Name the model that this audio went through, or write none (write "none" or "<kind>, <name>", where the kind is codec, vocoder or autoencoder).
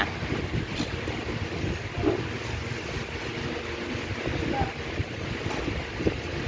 none